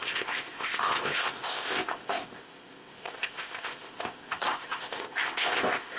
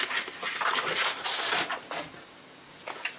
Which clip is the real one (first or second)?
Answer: second